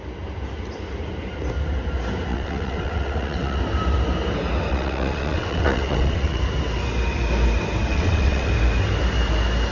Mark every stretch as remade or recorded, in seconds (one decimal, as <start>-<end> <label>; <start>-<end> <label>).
0.0-2.3 recorded; 2.3-3.6 remade; 3.6-4.7 recorded; 4.7-6.4 remade; 6.4-7.9 recorded; 7.9-8.5 remade; 8.5-9.7 recorded